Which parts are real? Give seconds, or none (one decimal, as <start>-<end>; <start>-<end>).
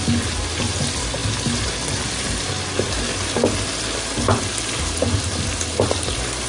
0.0-6.5